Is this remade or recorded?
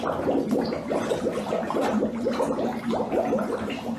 recorded